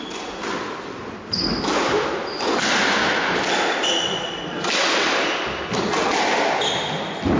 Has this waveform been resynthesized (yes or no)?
no